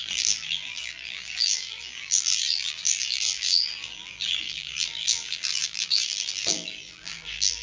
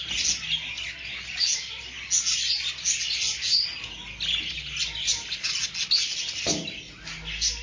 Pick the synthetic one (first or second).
first